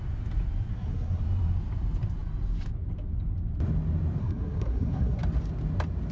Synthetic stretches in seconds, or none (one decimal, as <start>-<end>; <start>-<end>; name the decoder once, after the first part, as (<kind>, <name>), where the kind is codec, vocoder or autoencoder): 0.7-1.2 (codec, SNAC); 4.2-5.2